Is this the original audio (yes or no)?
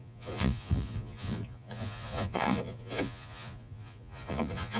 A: no